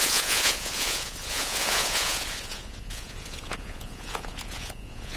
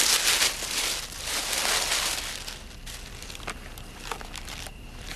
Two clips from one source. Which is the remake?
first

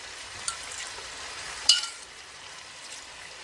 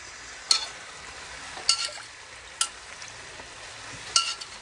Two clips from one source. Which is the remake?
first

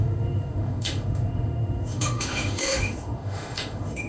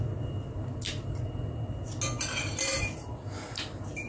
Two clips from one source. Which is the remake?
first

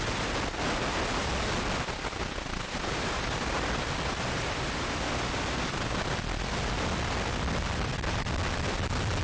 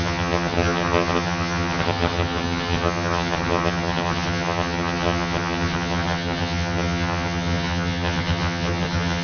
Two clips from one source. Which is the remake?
second